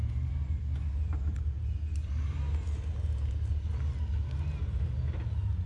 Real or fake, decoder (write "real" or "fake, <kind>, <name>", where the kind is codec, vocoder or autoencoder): real